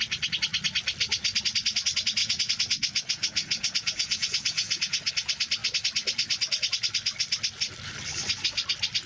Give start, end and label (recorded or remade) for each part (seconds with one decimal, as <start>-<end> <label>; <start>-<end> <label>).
0.0-2.2 recorded; 2.2-5.1 remade; 5.1-9.1 recorded